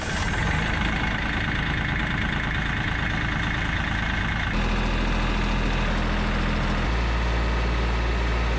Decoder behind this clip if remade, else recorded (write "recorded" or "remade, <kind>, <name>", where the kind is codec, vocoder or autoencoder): recorded